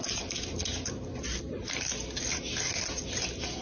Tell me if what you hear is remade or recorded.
recorded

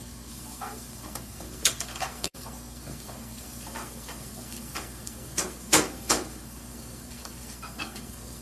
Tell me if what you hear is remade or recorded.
remade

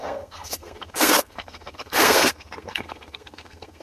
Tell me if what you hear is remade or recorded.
remade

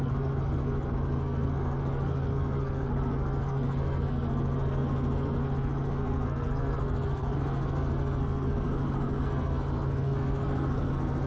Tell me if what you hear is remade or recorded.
remade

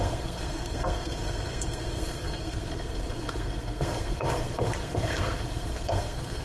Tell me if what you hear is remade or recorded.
remade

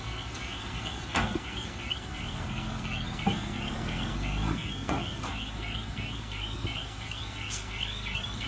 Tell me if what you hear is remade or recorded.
remade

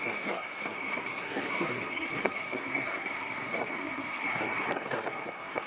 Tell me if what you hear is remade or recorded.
remade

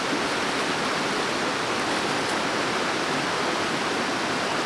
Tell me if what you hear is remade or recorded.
recorded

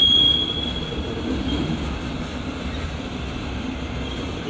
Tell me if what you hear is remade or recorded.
recorded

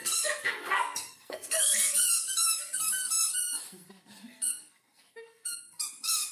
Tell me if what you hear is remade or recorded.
remade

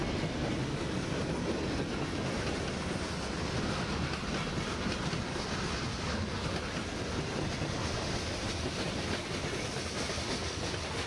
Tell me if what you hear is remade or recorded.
recorded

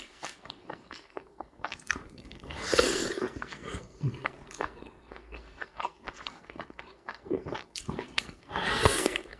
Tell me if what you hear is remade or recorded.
remade